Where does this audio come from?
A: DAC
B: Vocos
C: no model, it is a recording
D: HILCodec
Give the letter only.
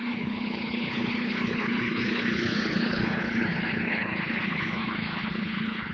D